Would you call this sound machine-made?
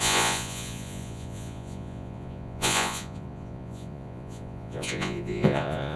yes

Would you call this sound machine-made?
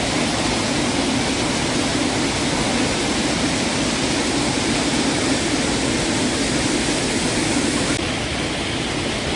no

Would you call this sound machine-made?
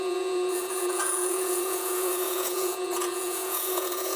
yes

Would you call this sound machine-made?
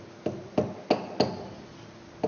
no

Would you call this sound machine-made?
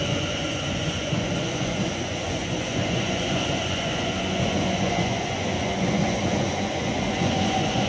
yes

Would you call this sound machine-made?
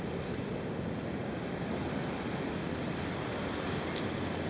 no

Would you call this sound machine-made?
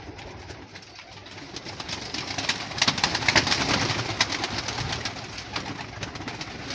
no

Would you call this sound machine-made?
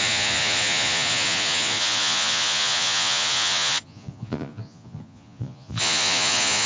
yes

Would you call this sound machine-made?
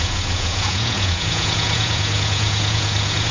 yes